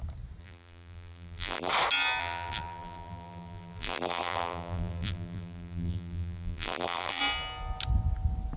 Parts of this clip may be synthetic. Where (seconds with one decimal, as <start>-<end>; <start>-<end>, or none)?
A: 0.4-1.7; 2.2-7.2